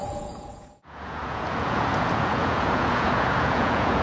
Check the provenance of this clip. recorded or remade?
remade